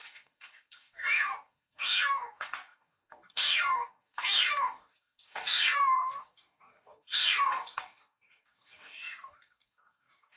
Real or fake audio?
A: fake